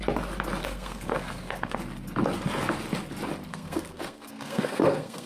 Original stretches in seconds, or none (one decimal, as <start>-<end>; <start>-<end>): 0.0-0.6; 1.8-3.5